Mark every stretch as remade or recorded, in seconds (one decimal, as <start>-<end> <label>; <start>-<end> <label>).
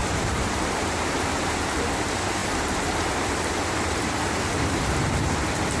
0.0-1.2 remade; 1.2-2.4 recorded; 2.4-5.3 remade; 5.3-5.8 recorded